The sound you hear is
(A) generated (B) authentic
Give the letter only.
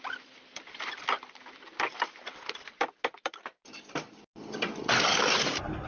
B